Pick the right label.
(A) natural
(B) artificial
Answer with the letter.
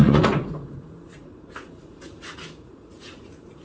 B